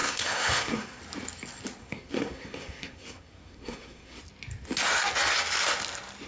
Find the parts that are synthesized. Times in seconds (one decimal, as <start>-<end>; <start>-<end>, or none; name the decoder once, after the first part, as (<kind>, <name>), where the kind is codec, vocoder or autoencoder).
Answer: 0.0-1.0 (codec, SNAC); 1.8-4.2